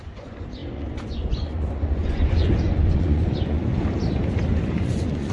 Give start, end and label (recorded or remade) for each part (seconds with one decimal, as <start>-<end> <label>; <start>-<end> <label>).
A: 0.0-3.7 remade; 3.7-4.7 recorded; 4.7-5.3 remade